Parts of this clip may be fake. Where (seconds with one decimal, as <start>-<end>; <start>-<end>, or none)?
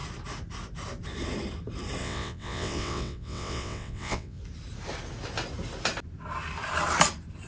2.0-4.4